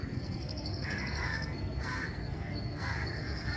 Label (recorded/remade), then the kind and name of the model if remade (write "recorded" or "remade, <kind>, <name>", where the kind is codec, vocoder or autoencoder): remade, codec, SNAC